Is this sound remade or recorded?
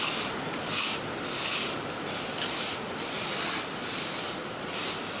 recorded